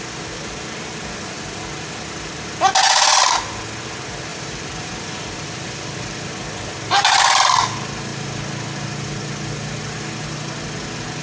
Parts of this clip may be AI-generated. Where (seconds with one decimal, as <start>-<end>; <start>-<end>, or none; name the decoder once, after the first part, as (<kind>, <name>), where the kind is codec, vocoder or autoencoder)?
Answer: 4.3-6.2 (vocoder, BigVGAN v2)